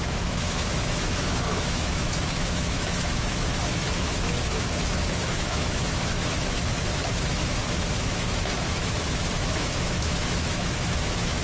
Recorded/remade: remade